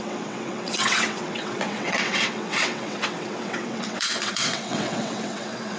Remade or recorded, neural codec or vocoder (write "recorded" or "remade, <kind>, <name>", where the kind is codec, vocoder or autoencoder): remade, vocoder, WaveNeXt